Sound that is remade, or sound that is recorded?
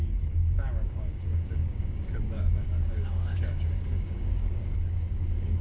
remade